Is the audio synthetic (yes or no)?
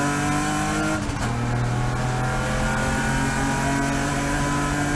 no